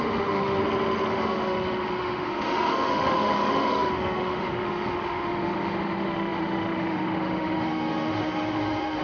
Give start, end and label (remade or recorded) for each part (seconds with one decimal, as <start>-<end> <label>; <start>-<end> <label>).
0.0-0.6 remade; 0.6-1.1 recorded; 1.1-9.0 remade